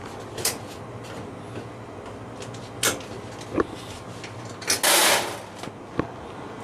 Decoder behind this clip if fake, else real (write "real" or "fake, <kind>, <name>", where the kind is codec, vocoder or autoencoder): real